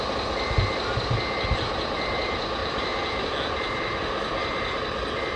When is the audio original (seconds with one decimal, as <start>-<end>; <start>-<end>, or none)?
0.0-2.6; 3.3-5.4